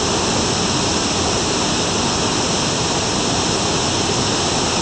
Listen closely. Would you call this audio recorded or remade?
recorded